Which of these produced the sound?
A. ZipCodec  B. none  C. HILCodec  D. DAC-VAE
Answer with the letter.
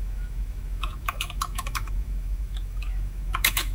D